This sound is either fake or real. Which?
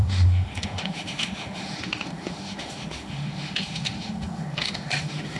fake